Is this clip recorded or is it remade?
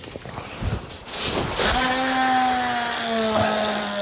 recorded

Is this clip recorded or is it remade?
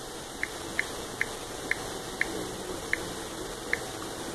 recorded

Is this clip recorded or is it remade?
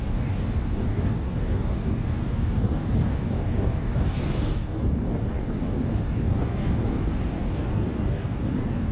remade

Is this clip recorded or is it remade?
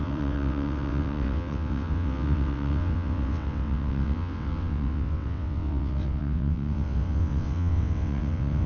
remade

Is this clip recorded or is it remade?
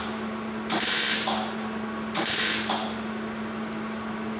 recorded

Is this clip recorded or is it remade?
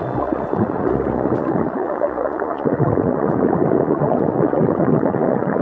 remade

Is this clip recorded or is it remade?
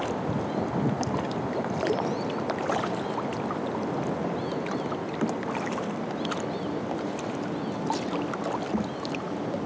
recorded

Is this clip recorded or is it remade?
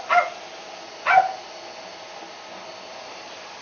recorded